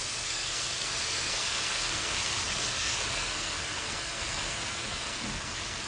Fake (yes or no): yes